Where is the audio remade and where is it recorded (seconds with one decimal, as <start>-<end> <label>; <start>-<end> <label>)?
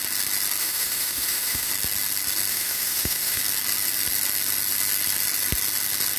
0.0-0.6 recorded; 0.6-1.7 remade; 1.7-2.5 recorded; 2.5-3.4 remade; 3.4-6.2 recorded